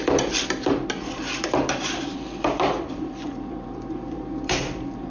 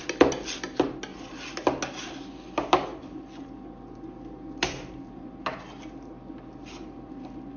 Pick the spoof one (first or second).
first